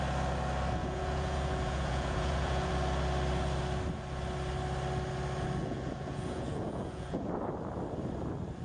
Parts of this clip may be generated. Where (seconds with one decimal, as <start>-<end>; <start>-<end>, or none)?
0.8-2.7; 5.6-7.3